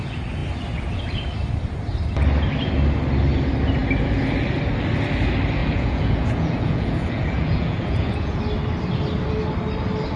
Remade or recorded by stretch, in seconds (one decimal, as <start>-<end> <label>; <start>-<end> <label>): 0.0-5.6 recorded; 5.6-8.4 remade; 8.4-10.2 recorded